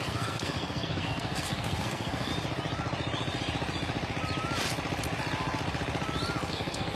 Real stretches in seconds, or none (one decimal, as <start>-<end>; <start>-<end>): 2.3-6.5